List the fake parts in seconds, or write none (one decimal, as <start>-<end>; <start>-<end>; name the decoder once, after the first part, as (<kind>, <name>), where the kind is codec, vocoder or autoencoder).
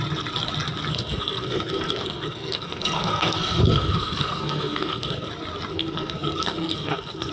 0.9-5.3 (codec, SNAC); 5.7-7.3